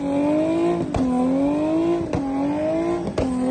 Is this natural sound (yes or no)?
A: yes